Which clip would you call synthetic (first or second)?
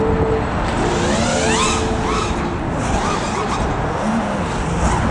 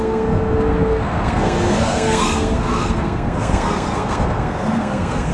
second